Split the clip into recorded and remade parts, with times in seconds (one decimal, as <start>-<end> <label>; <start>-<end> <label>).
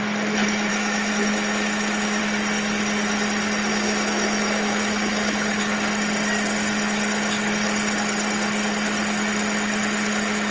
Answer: 0.0-0.7 recorded; 0.7-2.2 remade; 2.2-3.7 recorded; 3.7-5.6 remade; 5.6-10.5 recorded